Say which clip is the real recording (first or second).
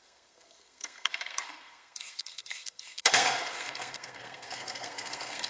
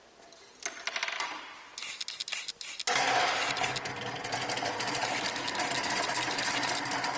second